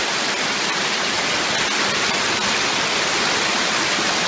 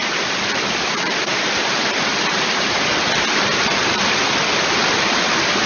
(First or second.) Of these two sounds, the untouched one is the first